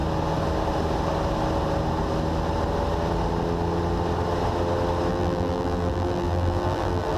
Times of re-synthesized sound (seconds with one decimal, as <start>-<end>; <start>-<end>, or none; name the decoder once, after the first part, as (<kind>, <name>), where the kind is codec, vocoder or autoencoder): 5.1-7.2 (vocoder, BigVGAN v2)